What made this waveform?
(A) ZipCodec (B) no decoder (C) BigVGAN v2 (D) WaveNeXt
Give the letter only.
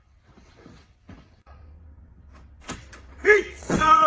D